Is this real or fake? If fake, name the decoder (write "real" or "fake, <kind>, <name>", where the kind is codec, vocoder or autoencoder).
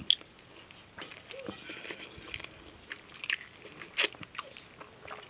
real